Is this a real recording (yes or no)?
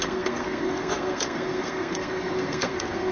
no